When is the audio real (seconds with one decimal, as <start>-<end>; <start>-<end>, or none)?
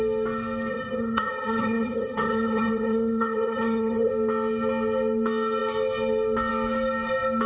0.0-0.7; 4.1-7.5